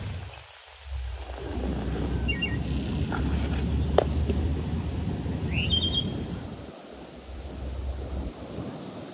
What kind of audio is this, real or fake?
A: real